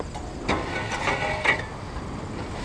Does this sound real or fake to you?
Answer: real